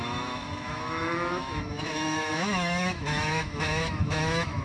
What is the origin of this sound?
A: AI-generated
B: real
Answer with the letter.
A